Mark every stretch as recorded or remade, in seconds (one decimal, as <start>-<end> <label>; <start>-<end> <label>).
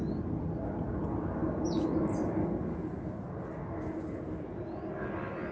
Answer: 0.0-5.5 recorded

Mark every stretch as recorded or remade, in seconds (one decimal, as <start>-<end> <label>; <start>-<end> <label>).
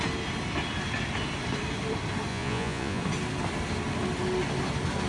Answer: 0.0-2.3 recorded; 2.3-3.0 remade; 3.0-5.1 recorded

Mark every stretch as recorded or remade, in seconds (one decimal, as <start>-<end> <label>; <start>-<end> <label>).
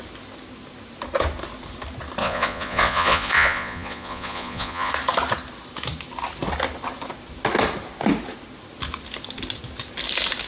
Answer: 0.0-2.2 recorded; 2.2-4.9 remade; 4.9-10.5 recorded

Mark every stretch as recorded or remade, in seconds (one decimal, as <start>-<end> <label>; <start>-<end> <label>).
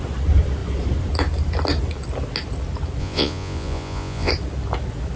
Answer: 0.0-3.0 recorded; 3.0-4.3 remade; 4.3-5.2 recorded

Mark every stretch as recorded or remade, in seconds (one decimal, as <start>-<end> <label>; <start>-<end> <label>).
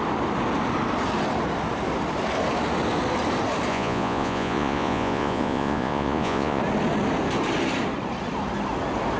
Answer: 0.0-3.7 recorded; 3.7-6.6 remade; 6.6-9.2 recorded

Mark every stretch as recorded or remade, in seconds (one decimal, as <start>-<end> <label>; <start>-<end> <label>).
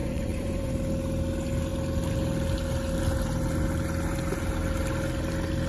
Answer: 0.0-0.7 remade; 0.7-5.7 recorded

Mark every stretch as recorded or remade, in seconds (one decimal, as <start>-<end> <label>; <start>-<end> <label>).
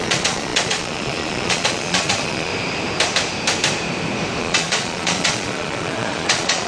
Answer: 0.0-2.5 remade; 2.5-4.4 recorded; 4.4-6.7 remade